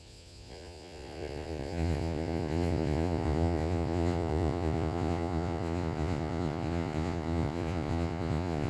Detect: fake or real fake